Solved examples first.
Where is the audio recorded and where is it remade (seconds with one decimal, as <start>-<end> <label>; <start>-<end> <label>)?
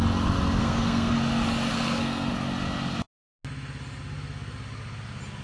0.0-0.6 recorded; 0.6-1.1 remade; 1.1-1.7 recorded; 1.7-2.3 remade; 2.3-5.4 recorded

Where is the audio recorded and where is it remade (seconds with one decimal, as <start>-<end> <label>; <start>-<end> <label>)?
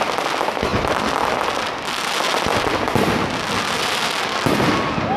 0.0-5.2 recorded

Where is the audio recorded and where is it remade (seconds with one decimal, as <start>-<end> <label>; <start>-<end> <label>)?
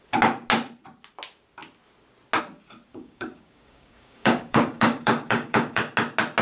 0.0-2.9 recorded; 2.9-5.8 remade; 5.8-6.4 recorded